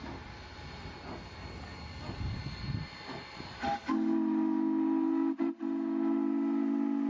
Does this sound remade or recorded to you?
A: recorded